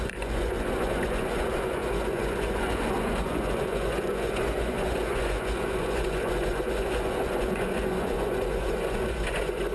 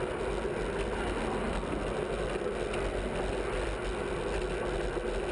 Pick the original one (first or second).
second